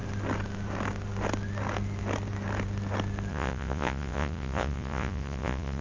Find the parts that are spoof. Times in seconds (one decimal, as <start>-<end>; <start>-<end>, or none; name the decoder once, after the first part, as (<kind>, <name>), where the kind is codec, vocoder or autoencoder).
3.3-5.8 (vocoder, Vocos)